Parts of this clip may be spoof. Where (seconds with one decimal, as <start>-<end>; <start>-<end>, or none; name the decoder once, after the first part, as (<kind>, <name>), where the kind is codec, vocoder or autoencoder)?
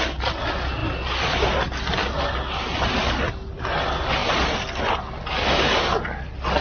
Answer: none